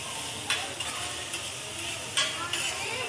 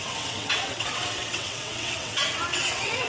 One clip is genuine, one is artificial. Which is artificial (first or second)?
second